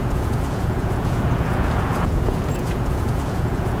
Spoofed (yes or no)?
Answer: yes